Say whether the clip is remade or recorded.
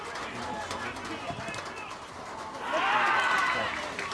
recorded